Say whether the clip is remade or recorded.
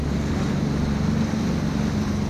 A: recorded